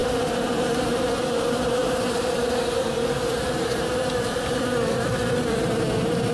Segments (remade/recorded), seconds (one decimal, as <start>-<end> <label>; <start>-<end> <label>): 0.0-1.0 remade; 1.0-1.8 recorded; 1.8-5.5 remade; 5.5-6.3 recorded